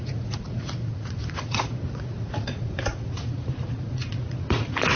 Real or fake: fake